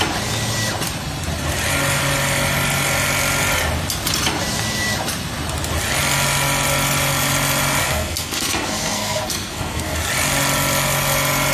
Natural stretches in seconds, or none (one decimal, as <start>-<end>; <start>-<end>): 0.0-7.8; 10.0-11.5